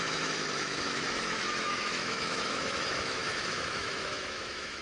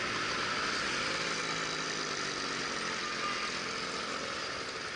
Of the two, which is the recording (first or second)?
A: second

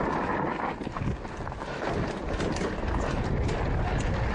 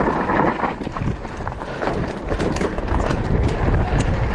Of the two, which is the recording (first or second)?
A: first